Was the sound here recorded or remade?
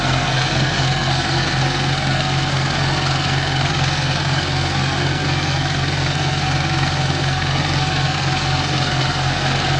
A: remade